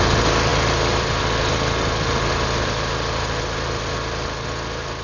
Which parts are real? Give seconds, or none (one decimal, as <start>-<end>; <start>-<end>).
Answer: 0.0-5.0